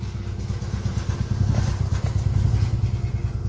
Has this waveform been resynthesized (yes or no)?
no